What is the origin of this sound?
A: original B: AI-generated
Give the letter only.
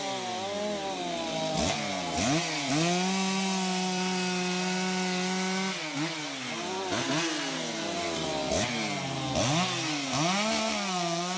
A